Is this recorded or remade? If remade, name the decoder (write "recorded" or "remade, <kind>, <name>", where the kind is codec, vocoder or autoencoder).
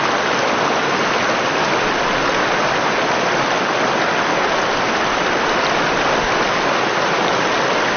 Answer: recorded